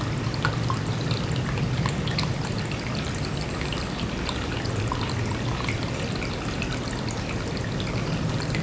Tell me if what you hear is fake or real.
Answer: real